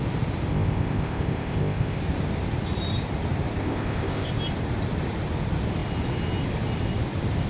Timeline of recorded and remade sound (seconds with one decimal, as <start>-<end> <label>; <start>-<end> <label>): 0.0-0.5 recorded; 0.5-2.0 remade; 2.0-3.6 recorded; 3.6-4.3 remade; 4.3-7.5 recorded